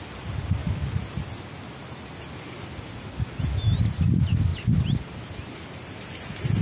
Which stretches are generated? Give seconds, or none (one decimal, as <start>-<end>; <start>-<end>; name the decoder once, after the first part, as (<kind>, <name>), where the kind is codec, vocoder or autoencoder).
none